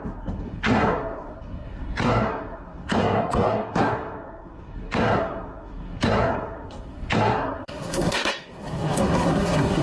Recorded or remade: remade